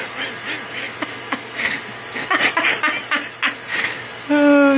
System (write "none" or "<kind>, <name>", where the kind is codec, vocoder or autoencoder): none